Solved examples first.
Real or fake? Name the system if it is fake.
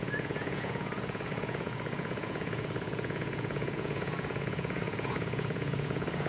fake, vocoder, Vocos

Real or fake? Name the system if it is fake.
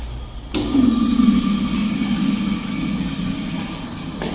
real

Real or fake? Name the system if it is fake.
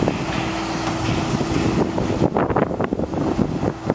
real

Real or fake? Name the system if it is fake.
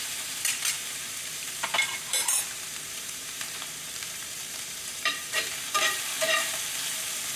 fake, vocoder, BigVGAN v2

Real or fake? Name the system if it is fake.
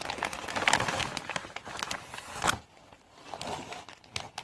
real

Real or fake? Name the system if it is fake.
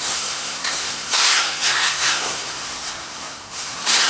fake, codec, SNAC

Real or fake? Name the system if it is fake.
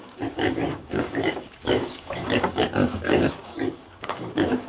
fake, codec, DAC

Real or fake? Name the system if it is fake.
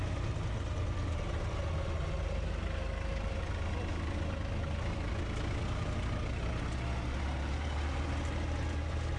real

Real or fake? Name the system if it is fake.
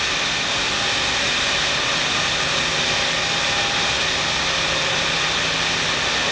real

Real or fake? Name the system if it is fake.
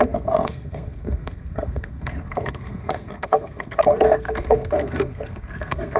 fake, codec, SNAC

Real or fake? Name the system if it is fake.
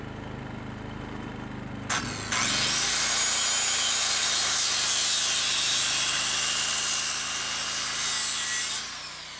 real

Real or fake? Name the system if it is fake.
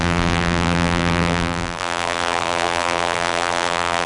fake, vocoder, BigVGAN v2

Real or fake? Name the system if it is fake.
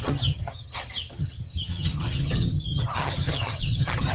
fake, vocoder, HiFi-GAN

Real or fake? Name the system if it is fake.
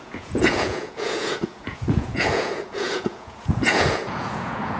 fake, vocoder, Vocos